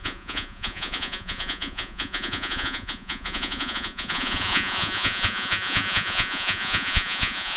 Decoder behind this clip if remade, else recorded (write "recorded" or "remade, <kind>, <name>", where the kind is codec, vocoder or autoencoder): remade, vocoder, Vocos